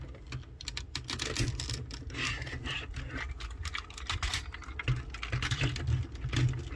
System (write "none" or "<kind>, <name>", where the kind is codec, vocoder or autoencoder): none